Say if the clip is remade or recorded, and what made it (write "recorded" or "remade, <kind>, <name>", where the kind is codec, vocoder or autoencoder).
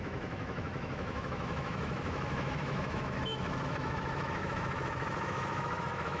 remade, autoencoder, DAC-VAE